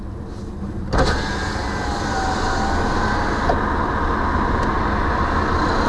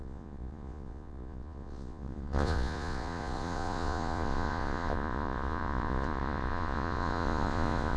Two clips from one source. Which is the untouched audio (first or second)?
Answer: first